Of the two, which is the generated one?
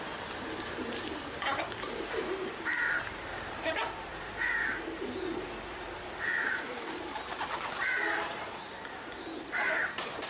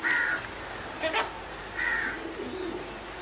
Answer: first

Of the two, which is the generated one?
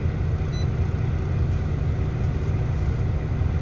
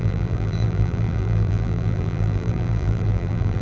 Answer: second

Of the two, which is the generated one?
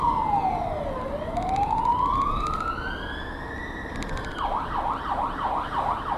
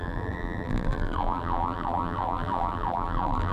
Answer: second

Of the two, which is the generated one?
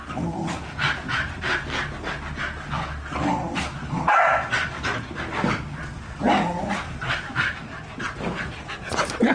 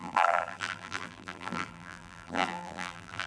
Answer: second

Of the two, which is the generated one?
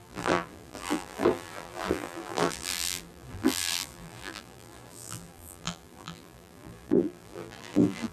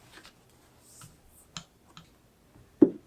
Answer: first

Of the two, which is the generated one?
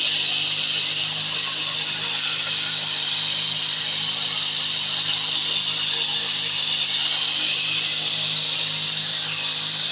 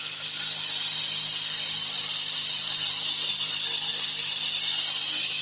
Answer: first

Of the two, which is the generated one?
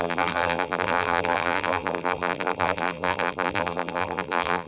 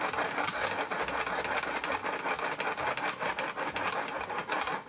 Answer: first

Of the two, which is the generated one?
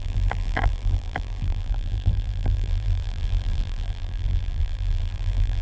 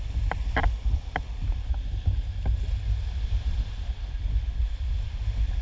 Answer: first